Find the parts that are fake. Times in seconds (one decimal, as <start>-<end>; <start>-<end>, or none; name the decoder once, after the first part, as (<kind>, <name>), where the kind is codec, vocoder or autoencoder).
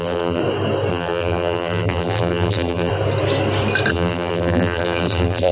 0.0-0.4 (vocoder, BigVGAN v2); 0.9-2.9; 3.9-5.5